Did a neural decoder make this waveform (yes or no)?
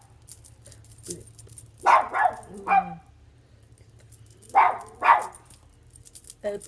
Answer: no